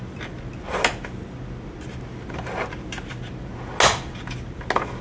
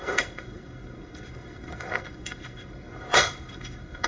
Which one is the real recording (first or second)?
first